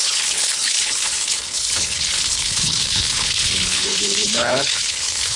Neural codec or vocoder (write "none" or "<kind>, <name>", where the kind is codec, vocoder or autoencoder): codec, HILCodec